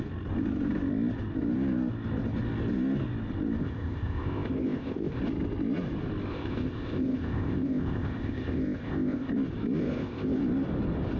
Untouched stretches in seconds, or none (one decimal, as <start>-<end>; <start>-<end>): 0.0-3.6; 5.2-6.3; 9.3-9.8; 10.4-11.2